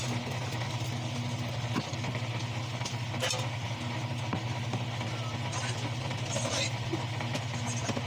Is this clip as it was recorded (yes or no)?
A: yes